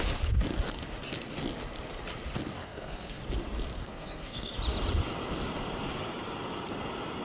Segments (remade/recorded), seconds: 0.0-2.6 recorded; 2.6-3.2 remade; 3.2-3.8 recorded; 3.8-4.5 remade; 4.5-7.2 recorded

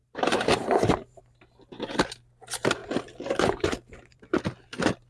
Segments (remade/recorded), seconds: 0.0-1.2 remade; 1.2-2.8 recorded; 2.8-4.4 remade; 4.4-5.1 recorded